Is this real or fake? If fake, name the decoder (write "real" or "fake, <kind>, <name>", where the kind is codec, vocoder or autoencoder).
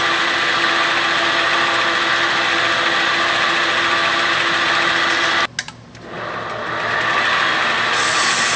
real